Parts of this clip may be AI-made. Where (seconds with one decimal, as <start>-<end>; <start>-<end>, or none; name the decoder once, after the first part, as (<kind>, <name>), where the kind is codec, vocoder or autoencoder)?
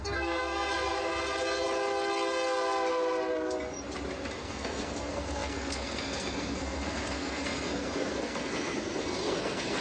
0.0-1.1 (codec, SNAC); 4.4-9.8